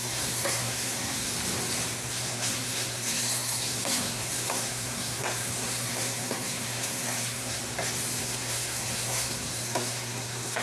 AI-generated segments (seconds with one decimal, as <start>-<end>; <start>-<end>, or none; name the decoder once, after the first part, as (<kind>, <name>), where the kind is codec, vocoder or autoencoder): 0.0-1.3 (codec, SNAC); 2.1-7.6; 8.2-10.6

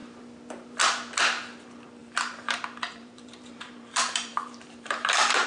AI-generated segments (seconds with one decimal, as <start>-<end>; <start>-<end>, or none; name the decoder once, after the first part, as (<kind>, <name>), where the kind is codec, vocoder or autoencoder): 2.0-5.5 (vocoder, BigVGAN v2)

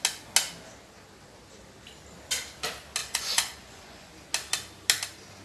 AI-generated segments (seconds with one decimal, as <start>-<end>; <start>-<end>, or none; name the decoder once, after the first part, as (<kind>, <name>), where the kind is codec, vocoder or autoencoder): 3.0-4.1 (vocoder, Vocos)